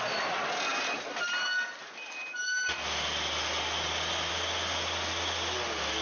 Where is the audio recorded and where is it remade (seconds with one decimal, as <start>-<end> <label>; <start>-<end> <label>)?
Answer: 0.0-6.0 recorded